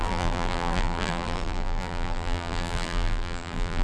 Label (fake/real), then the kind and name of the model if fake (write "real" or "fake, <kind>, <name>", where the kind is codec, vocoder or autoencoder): fake, vocoder, BigVGAN v2